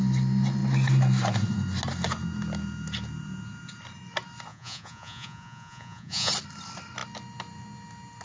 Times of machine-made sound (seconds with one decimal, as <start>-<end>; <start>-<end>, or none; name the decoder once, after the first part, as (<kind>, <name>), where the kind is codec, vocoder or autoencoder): 4.5-6.3 (vocoder, Vocos)